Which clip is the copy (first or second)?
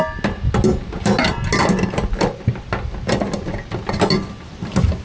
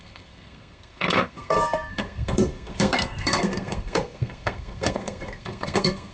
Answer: second